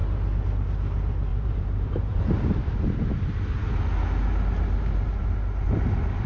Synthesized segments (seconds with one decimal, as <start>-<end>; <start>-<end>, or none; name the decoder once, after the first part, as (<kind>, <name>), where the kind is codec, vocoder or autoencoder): 1.3-2.2 (vocoder, BigVGAN v2)